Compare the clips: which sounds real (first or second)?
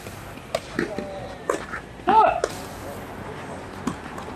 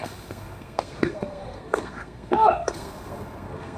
first